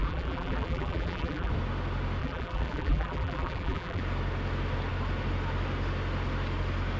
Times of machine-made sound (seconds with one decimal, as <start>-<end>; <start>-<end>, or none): 0.0-1.5; 2.2-4.0